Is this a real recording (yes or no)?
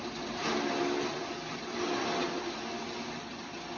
yes